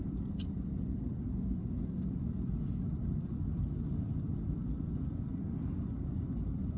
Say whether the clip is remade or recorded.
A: remade